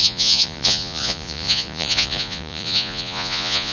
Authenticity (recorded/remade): remade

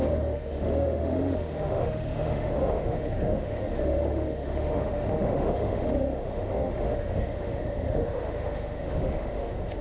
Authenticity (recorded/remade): remade